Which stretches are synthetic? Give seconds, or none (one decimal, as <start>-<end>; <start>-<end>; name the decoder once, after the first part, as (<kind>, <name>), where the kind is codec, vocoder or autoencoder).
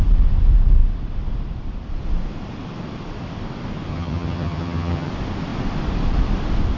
3.9-5.1 (vocoder, HiFi-GAN)